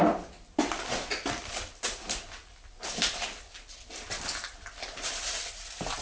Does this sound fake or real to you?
real